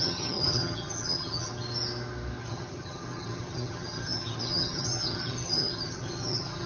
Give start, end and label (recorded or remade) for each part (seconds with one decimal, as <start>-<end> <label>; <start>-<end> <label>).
0.0-1.5 remade; 1.5-2.4 recorded; 2.4-6.7 remade